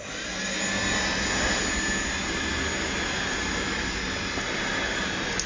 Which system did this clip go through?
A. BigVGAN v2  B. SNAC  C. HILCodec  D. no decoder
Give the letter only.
D